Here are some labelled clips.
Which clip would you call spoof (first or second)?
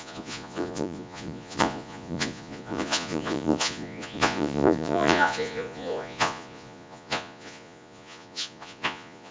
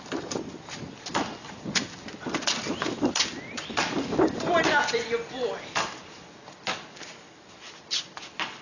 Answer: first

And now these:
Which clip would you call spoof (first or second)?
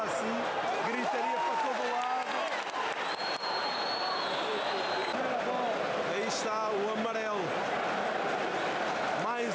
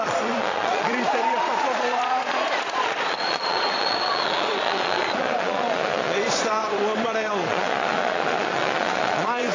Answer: second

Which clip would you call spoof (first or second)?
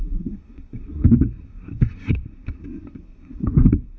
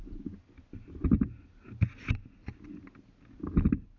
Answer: first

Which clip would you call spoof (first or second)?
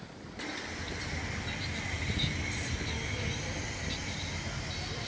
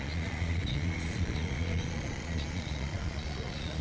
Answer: second